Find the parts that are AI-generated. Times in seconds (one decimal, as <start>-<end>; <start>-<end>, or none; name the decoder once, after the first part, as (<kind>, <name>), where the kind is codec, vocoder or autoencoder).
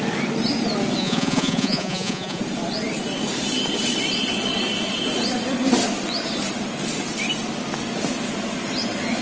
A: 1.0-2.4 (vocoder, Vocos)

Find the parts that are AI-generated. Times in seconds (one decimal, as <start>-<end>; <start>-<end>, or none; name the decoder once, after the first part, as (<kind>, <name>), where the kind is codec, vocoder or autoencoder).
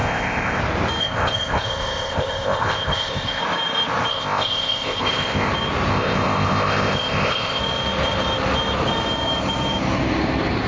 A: 0.0-0.6 (codec, ZipCodec); 1.0-3.4; 4.1-5.5; 5.9-7.6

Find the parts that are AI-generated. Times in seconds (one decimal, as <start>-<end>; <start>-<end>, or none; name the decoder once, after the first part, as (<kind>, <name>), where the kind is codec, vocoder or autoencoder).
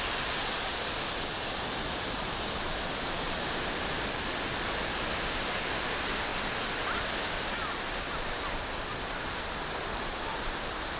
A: none